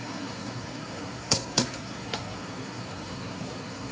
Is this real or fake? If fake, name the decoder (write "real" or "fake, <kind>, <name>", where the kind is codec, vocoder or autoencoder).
fake, codec, SNAC